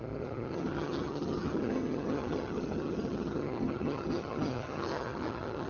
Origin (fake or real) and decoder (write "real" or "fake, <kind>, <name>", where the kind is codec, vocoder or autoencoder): fake, vocoder, HiFi-GAN